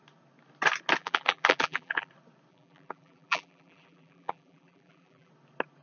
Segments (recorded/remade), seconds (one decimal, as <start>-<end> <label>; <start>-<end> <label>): 0.0-1.0 recorded; 1.0-2.1 remade; 2.1-2.5 recorded; 2.5-5.3 remade; 5.3-5.8 recorded